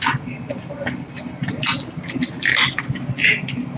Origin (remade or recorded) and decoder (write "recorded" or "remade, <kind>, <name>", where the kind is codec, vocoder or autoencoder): recorded